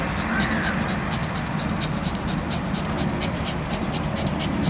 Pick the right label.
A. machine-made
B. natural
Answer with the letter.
B